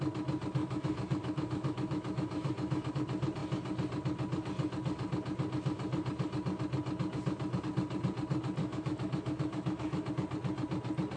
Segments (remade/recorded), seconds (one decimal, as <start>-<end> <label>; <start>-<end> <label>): 0.0-0.6 recorded; 0.6-2.9 remade; 2.9-8.6 recorded; 8.6-10.1 remade; 10.1-11.2 recorded